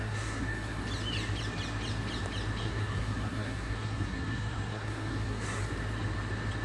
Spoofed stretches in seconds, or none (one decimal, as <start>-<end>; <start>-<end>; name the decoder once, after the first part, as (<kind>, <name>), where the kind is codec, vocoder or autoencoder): 0.0-0.8 (codec, SNAC); 2.6-5.6